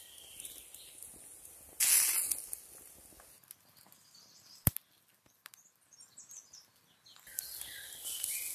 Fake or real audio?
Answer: real